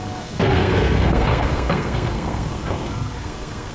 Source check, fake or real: fake